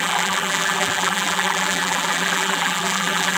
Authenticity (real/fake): fake